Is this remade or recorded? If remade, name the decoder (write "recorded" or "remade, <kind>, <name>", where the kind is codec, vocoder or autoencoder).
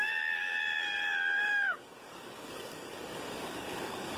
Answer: remade, codec, DAC